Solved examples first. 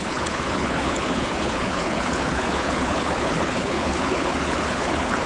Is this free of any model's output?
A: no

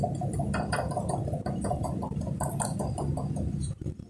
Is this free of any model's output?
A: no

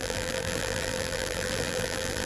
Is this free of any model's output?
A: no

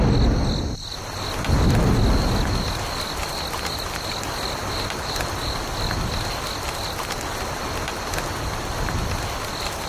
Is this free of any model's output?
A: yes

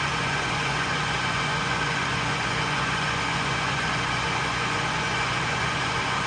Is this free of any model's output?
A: no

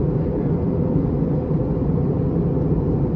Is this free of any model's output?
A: yes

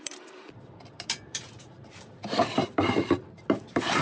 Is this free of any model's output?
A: no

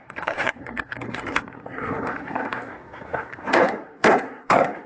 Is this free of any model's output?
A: no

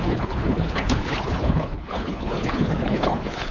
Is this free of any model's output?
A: no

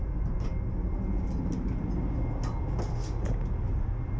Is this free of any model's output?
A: yes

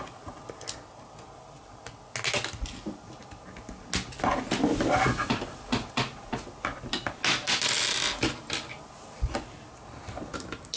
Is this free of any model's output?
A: yes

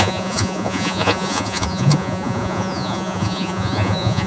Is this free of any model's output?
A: no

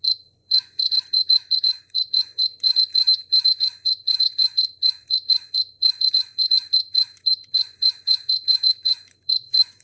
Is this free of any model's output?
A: no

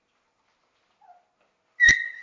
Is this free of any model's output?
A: yes